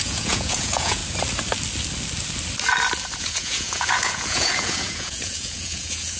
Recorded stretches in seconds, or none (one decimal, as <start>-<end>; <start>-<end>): 1.0-3.2